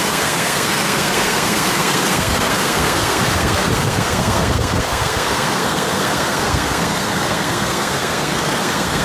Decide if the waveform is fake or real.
fake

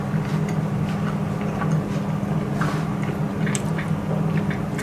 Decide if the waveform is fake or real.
real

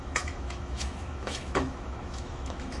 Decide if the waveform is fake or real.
fake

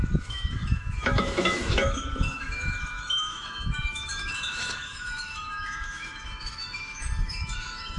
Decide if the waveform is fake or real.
fake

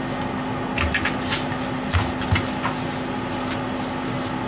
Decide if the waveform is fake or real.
real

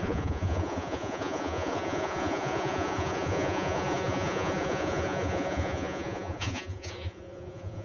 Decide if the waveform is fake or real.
fake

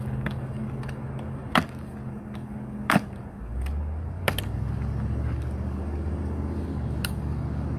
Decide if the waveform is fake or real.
fake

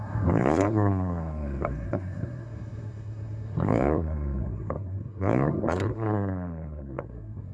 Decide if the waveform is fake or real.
fake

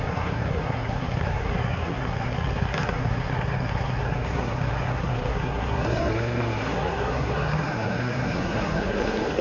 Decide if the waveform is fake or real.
fake